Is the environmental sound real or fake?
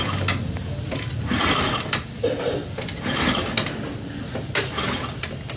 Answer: real